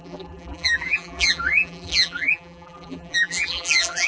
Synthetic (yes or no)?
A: yes